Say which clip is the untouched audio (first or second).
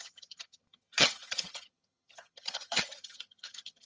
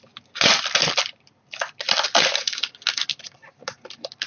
second